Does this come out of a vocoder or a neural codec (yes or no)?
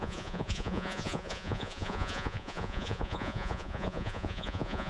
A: yes